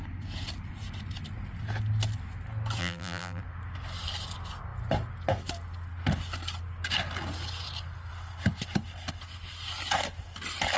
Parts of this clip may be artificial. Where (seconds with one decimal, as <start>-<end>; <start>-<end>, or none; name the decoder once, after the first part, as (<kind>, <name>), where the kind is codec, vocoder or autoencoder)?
2.8-3.4 (vocoder, BigVGAN v2)